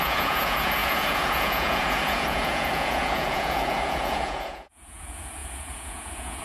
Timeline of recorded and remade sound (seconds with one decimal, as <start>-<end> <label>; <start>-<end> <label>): 0.0-6.4 remade